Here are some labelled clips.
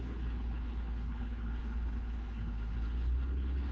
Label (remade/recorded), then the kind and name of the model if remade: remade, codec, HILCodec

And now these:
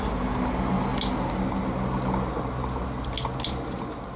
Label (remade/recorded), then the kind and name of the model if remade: recorded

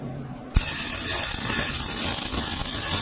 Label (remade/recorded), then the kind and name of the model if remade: recorded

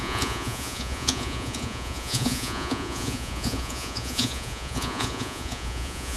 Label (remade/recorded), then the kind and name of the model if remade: remade, vocoder, Vocos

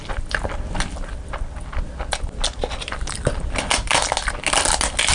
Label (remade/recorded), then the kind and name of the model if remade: recorded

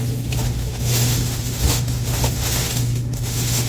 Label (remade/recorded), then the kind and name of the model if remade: remade, autoencoder, DAC-VAE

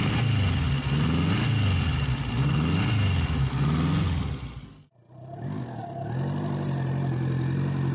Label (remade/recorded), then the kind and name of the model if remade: recorded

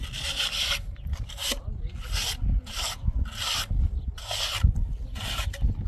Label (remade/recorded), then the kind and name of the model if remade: recorded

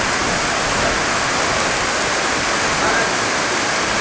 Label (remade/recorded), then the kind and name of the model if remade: recorded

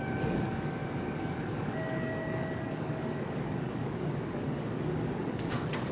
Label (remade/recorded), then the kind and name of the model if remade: remade, codec, DAC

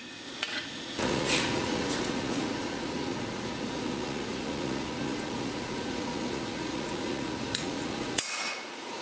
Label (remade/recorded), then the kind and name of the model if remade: remade, vocoder, Vocos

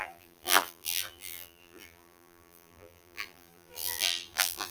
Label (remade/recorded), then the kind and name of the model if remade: remade, vocoder, BigVGAN v2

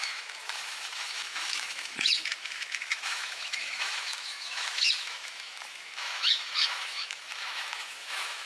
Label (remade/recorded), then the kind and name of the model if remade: remade, autoencoder, DAC-VAE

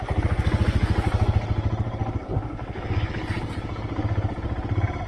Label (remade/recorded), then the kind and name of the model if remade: recorded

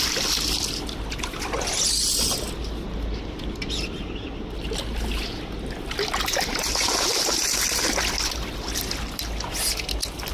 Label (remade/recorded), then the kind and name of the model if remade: recorded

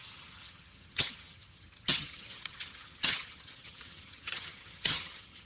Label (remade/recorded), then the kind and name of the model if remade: remade, vocoder, HiFi-GAN